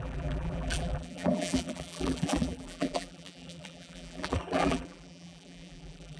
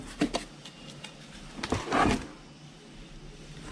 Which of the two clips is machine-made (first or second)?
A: first